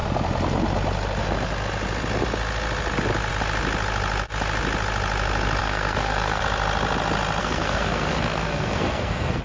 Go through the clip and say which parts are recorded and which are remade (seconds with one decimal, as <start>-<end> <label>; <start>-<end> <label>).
0.0-5.6 recorded; 5.6-6.4 remade; 6.4-7.4 recorded; 7.4-9.4 remade